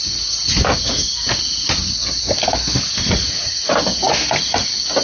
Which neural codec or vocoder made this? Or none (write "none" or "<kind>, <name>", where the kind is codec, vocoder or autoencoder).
none